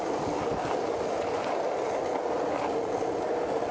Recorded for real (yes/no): yes